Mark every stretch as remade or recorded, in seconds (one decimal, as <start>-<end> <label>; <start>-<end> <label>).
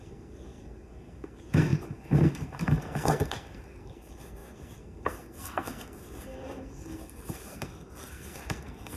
0.0-9.0 remade